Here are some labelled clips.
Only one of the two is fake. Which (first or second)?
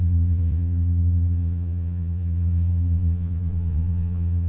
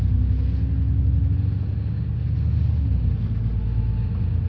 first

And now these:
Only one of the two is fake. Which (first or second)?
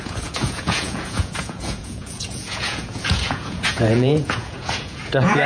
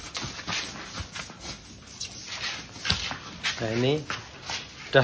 first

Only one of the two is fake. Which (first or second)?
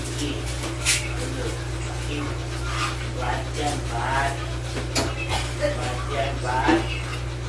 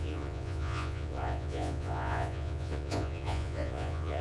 second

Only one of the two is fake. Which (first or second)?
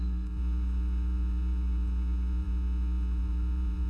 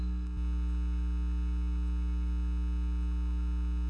first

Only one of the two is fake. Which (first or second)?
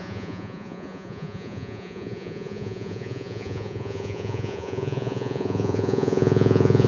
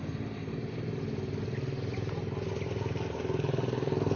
first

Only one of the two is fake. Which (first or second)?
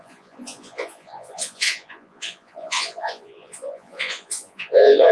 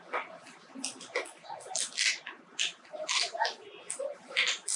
first